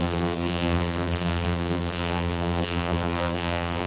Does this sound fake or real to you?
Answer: fake